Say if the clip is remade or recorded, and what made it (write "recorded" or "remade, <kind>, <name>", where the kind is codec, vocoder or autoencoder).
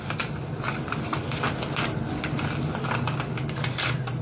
recorded